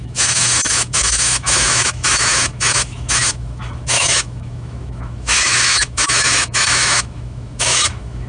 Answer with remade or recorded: remade